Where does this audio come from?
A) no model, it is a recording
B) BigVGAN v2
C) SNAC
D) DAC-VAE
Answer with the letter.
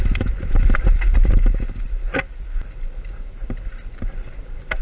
A